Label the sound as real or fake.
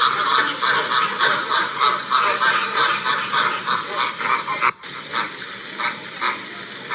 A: real